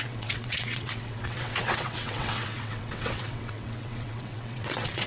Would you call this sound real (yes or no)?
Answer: no